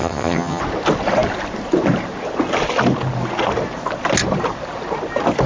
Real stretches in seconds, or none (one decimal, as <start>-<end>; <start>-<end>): 0.6-5.5